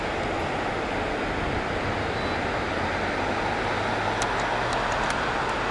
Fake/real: real